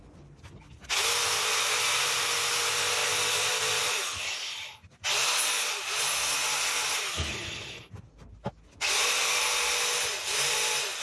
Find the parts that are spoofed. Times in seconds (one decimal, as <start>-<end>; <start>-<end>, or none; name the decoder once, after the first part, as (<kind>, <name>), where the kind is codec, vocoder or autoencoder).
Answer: none